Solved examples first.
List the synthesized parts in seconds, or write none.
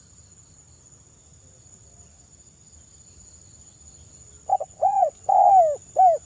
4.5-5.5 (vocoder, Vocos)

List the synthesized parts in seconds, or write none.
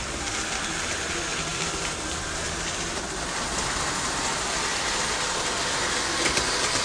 none